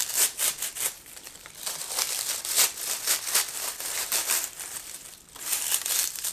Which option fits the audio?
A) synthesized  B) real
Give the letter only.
A